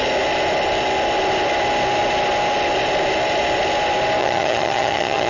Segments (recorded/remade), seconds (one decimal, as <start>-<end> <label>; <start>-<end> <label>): 0.0-4.2 recorded; 4.2-5.3 remade